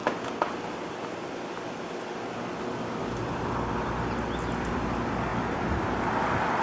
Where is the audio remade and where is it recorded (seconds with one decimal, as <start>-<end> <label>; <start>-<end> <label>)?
0.0-6.6 recorded